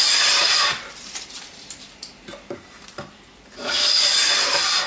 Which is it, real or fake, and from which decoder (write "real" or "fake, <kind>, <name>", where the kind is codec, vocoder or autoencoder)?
fake, vocoder, BigVGAN v2